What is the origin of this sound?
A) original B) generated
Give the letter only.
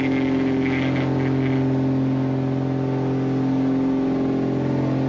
A